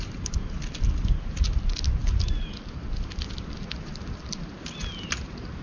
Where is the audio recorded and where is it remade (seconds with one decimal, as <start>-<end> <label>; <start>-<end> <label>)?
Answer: 0.0-5.6 recorded

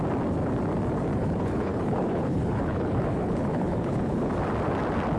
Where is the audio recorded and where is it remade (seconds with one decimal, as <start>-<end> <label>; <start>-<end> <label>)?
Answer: 0.0-1.2 recorded; 1.2-4.3 remade; 4.3-5.2 recorded

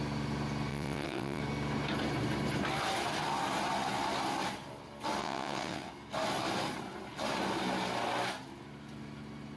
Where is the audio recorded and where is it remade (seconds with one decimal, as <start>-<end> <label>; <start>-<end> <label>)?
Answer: 0.0-0.7 recorded; 0.7-1.4 remade; 1.4-5.2 recorded; 5.2-5.9 remade; 5.9-9.6 recorded

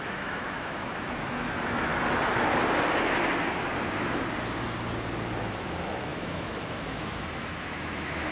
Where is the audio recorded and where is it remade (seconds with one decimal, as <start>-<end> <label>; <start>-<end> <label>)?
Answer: 0.0-1.9 remade; 1.9-5.4 recorded; 5.4-8.3 remade

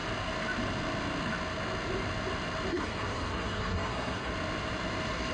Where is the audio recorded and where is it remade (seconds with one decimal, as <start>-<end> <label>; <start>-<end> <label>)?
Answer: 0.0-2.7 recorded; 2.7-4.3 remade; 4.3-5.3 recorded